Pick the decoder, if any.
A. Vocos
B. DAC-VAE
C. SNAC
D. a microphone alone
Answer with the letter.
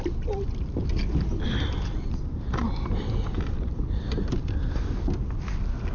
D